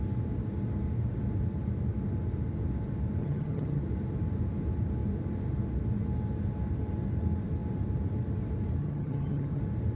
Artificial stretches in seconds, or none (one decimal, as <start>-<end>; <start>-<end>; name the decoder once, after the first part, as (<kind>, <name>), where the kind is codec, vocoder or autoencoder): 3.2-3.8 (vocoder, HiFi-GAN); 8.8-9.6